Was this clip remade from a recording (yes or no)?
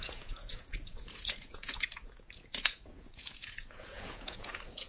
yes